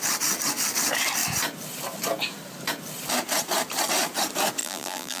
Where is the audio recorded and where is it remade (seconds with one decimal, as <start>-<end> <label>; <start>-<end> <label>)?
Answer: 0.0-4.6 recorded; 4.6-5.2 remade